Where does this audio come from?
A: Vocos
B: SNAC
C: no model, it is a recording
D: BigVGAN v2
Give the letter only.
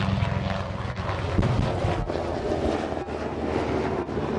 C